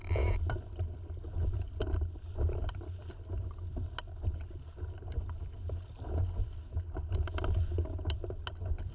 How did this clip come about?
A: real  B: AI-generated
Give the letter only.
A